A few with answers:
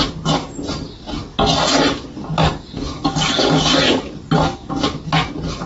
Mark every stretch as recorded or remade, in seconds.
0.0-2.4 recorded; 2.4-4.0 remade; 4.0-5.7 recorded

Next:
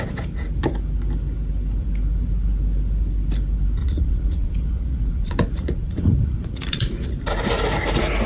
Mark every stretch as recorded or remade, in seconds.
0.0-3.8 recorded; 3.8-7.4 remade; 7.4-8.3 recorded